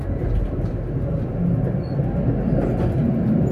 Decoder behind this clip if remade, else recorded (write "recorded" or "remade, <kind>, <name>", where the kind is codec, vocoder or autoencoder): recorded